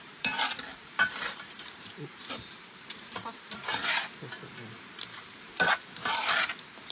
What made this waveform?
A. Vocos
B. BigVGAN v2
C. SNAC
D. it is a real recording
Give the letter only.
B